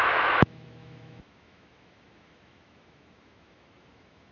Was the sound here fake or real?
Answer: fake